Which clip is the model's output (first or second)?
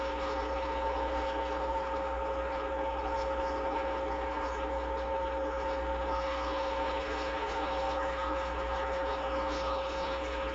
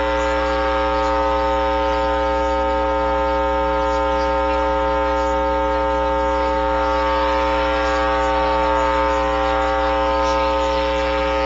first